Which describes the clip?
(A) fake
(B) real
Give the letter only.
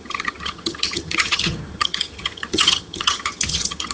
A